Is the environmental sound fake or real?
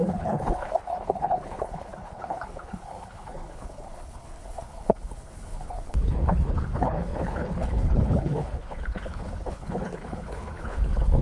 fake